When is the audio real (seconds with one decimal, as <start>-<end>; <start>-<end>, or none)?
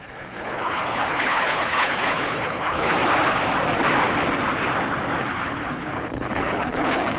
3.0-5.2